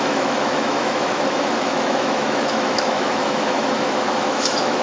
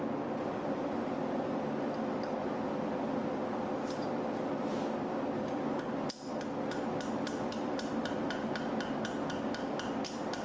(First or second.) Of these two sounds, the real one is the second